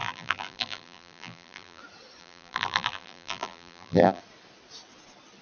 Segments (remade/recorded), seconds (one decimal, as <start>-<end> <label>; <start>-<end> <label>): 0.0-1.8 remade; 1.8-2.2 recorded; 2.2-4.2 remade; 4.2-5.4 recorded